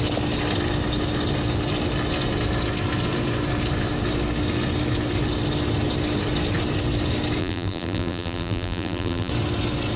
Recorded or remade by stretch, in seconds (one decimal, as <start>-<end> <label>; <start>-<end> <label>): 0.0-7.4 recorded; 7.4-9.3 remade; 9.3-10.0 recorded